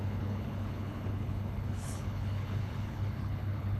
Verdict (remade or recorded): remade